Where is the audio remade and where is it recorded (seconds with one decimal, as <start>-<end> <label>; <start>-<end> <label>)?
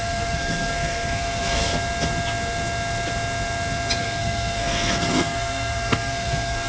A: 0.0-1.7 remade; 1.7-4.0 recorded; 4.0-6.7 remade